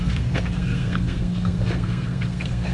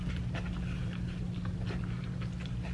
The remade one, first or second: first